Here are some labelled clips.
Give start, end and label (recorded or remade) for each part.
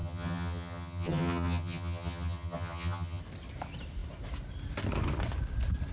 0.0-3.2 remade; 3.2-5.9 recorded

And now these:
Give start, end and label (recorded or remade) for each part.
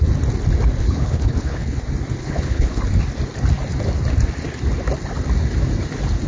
0.0-0.8 recorded; 0.8-1.8 remade; 1.8-2.2 recorded; 2.2-2.8 remade; 2.8-6.3 recorded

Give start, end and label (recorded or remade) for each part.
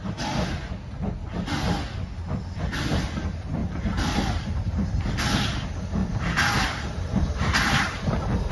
0.0-3.6 recorded; 3.6-5.2 remade; 5.2-6.0 recorded; 6.0-8.5 remade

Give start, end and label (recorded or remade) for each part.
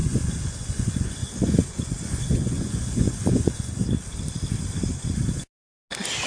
0.0-3.8 remade; 3.8-6.3 recorded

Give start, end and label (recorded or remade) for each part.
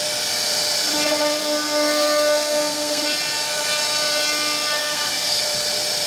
0.0-1.4 recorded; 1.4-3.0 remade; 3.0-4.8 recorded; 4.8-5.4 remade; 5.4-6.1 recorded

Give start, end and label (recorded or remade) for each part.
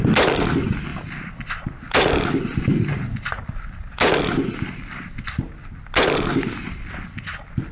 0.0-7.7 recorded